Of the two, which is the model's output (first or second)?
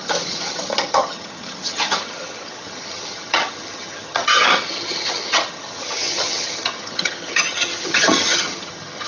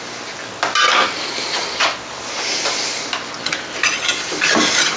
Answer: first